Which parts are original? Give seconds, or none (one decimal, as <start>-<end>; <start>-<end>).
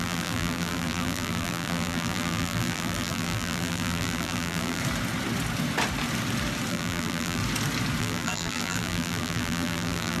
4.8-6.7; 7.4-8.0